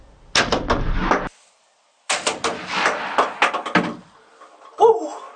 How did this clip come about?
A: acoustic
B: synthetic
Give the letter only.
A